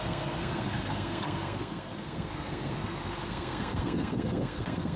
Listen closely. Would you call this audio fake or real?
fake